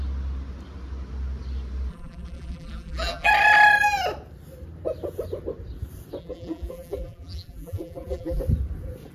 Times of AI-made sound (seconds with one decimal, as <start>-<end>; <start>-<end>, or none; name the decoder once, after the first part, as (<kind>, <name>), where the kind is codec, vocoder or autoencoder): 1.9-3.3 (vocoder, BigVGAN v2); 6.2-8.4